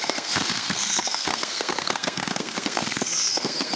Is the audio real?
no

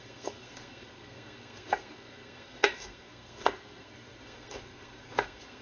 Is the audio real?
no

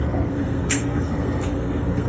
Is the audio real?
no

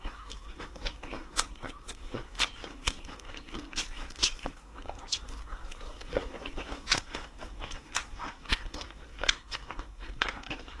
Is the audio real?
no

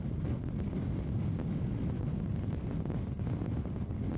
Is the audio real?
yes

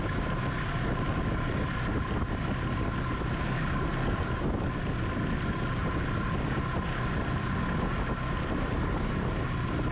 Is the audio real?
yes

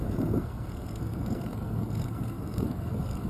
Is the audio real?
no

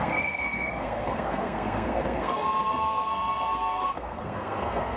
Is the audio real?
no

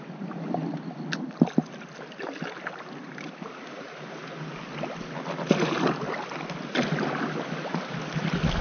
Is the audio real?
yes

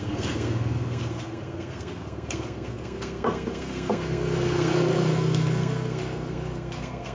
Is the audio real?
no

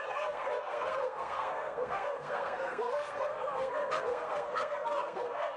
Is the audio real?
no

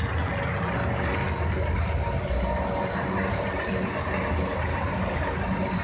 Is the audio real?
yes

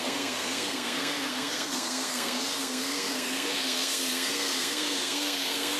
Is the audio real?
no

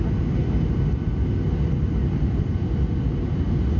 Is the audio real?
yes